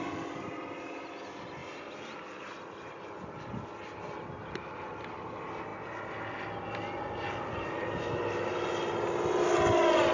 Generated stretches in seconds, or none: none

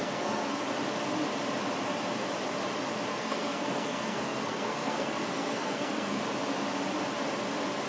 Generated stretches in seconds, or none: 0.0-0.6 (codec, SNAC); 3.1-6.2